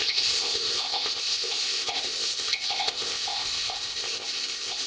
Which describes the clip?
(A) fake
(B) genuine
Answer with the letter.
A